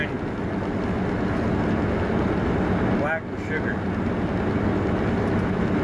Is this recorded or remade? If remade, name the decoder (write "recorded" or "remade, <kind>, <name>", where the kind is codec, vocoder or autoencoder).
recorded